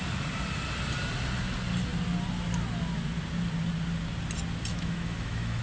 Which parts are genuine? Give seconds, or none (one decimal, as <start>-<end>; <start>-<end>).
0.0-4.7